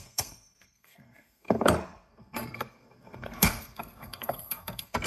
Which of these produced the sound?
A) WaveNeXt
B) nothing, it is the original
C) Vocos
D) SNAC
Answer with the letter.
D